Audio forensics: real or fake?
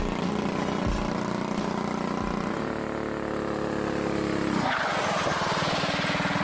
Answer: real